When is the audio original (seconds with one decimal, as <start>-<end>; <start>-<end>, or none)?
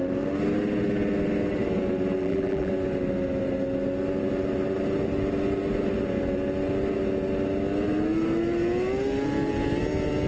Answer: 0.0-2.2; 2.7-10.3